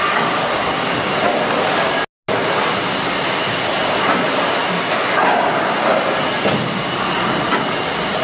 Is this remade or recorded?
recorded